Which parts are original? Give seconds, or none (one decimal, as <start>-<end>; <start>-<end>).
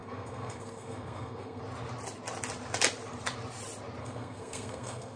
1.6-4.0